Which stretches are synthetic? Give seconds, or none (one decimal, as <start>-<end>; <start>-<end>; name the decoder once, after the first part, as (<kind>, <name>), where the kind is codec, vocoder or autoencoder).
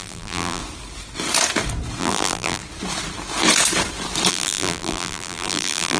0.0-0.6 (vocoder, BigVGAN v2); 2.0-2.6; 4.3-6.0